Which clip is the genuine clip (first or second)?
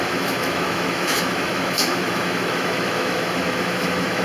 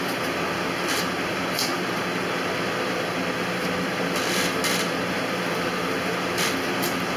second